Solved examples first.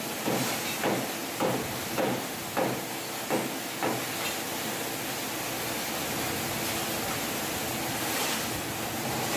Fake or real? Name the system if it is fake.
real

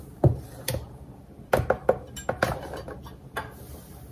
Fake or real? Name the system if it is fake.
real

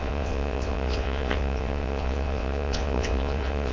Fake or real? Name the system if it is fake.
fake, vocoder, WaveNeXt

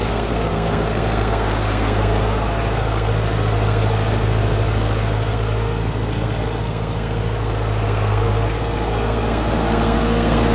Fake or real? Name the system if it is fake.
fake, codec, SNAC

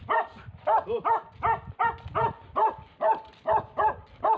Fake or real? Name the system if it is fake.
real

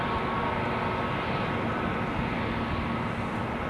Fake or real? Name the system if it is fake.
real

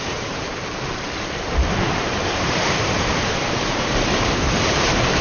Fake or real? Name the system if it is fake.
fake, vocoder, BigVGAN v2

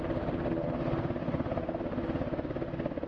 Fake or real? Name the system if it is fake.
real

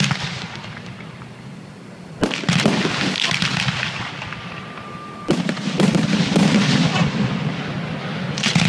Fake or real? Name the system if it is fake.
real